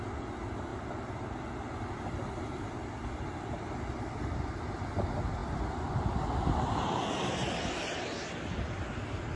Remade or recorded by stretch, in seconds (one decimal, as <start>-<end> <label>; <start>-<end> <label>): 0.0-0.7 recorded; 0.7-4.8 remade; 4.8-9.4 recorded